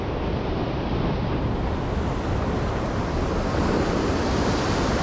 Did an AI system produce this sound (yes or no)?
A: no